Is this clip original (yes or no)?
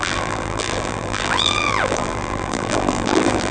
no